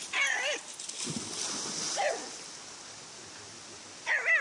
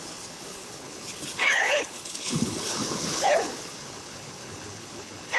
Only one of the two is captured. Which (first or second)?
first